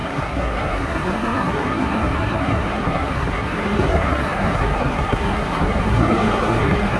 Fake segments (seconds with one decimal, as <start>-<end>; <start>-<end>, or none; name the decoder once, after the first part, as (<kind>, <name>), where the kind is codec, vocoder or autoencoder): 0.0-7.0 (codec, SNAC)